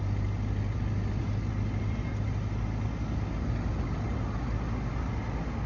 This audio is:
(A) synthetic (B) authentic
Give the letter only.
B